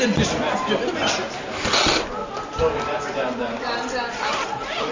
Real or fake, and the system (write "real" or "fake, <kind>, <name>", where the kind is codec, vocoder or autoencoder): real